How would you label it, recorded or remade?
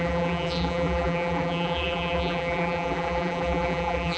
remade